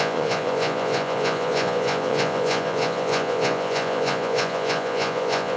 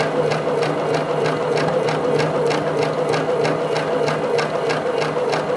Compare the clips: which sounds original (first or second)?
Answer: second